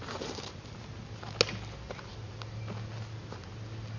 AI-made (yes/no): no